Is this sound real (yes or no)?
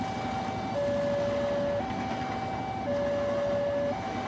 yes